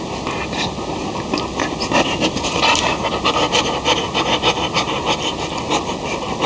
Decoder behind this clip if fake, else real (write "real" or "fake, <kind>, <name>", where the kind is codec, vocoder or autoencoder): real